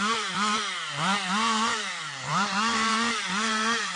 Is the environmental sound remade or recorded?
remade